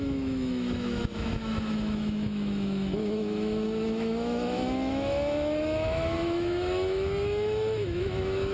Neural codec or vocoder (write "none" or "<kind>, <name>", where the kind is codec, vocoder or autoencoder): autoencoder, DAC-VAE